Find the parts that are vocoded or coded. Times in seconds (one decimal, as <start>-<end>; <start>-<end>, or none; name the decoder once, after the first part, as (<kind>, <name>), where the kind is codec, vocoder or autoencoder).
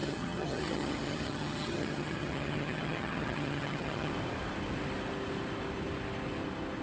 0.0-4.1 (vocoder, HiFi-GAN)